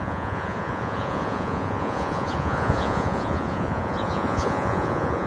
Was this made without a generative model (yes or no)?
no